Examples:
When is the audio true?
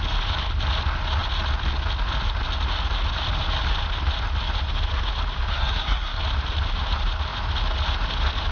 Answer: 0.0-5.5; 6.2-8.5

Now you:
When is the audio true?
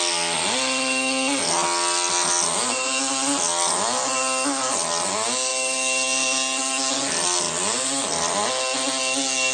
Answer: 0.0-9.5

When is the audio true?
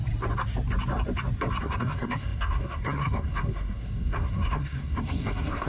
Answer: 0.0-1.6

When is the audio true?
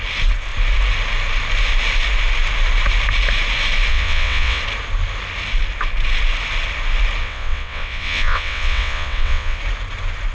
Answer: 0.0-3.9; 4.6-7.2; 9.6-10.3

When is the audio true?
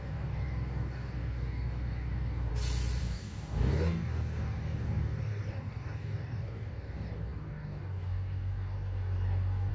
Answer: 2.5-3.0